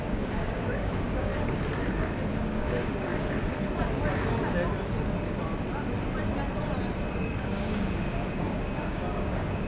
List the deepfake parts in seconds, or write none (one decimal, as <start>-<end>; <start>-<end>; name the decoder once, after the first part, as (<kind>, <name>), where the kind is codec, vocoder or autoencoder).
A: 0.0-1.3 (codec, DAC); 2.3-3.1; 7.2-9.7